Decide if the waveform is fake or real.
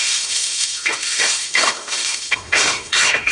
fake